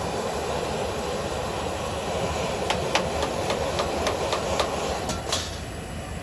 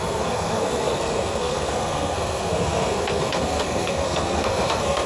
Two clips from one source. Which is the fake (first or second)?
second